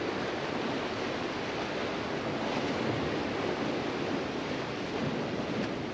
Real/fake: real